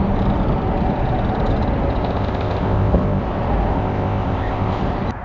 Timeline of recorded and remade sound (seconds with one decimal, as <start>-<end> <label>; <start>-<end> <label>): 0.0-2.0 recorded; 2.0-3.2 remade; 3.2-3.7 recorded; 3.7-4.8 remade; 4.8-5.2 recorded